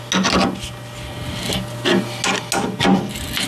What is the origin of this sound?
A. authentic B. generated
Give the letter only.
A